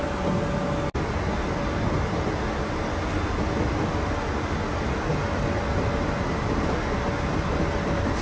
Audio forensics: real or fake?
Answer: real